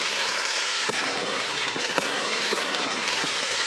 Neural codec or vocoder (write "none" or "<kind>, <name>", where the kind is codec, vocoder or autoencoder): codec, SNAC